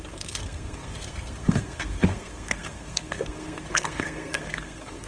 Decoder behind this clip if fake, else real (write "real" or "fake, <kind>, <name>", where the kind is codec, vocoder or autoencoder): fake, codec, SNAC